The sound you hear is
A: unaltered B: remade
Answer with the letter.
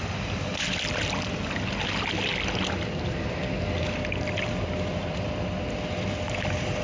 A